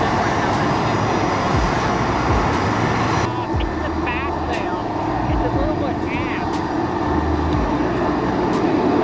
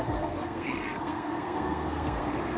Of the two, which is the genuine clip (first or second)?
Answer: first